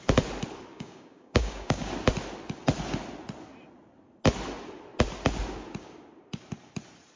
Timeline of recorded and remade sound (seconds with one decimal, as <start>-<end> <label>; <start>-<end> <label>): 0.0-0.7 recorded; 0.7-1.9 remade; 1.9-7.2 recorded